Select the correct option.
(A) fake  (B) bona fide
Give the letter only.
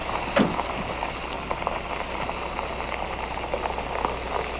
B